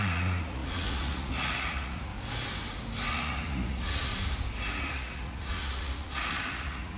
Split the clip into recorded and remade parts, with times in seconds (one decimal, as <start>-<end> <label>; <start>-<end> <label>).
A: 0.0-2.1 remade; 2.1-3.1 recorded; 3.1-4.1 remade; 4.1-4.8 recorded; 4.8-7.0 remade